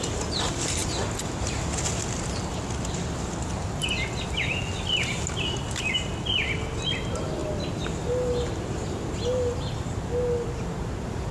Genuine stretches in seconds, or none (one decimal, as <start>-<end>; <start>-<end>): 0.0-11.3